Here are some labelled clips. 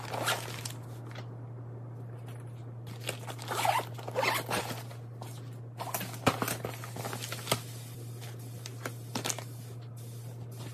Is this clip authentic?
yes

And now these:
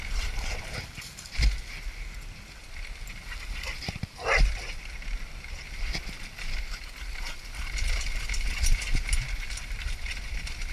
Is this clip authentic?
yes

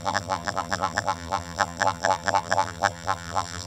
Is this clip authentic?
no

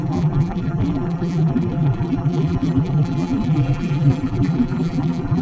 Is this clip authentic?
no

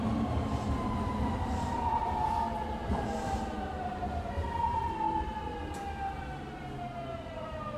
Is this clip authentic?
no